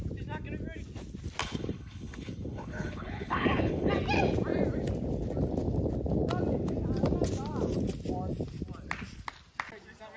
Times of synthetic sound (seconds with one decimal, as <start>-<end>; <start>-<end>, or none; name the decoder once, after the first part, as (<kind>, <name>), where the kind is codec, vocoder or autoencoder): 1.4-3.9 (codec, HILCodec)